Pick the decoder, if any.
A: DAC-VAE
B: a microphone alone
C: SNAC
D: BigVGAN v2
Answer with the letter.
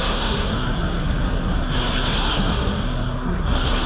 C